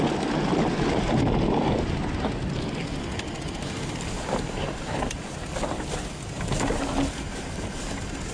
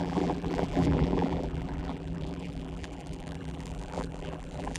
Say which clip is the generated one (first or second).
second